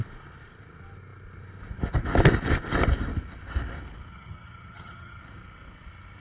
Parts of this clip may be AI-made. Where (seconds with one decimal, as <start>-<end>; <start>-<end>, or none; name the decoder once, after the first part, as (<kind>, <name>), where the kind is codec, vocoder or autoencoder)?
4.1-5.2 (vocoder, HiFi-GAN)